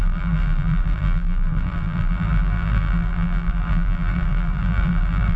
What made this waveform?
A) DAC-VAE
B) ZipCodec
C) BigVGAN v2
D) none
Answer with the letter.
C